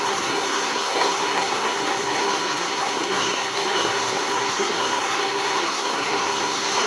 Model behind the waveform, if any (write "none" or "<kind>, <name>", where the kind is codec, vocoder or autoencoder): codec, SNAC